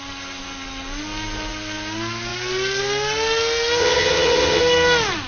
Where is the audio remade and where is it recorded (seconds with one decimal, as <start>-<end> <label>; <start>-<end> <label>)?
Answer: 0.0-3.8 recorded; 3.8-4.6 remade; 4.6-5.3 recorded

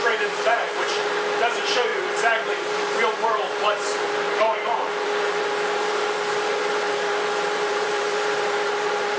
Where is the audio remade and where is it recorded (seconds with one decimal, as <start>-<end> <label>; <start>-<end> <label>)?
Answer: 0.0-9.2 remade

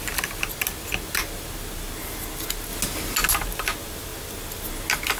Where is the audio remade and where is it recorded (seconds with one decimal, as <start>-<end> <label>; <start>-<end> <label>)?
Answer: 0.0-5.2 recorded

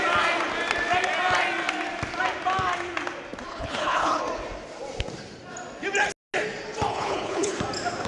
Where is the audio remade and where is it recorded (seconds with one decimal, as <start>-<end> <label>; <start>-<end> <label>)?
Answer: 0.0-3.5 recorded; 3.5-4.2 remade; 4.2-6.9 recorded; 6.9-7.6 remade; 7.6-8.1 recorded

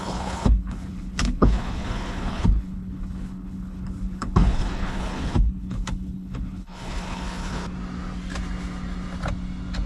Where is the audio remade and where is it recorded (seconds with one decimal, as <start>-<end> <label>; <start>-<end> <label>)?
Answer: 0.0-7.6 remade; 7.6-9.9 recorded